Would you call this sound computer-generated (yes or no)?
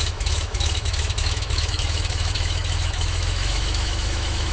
yes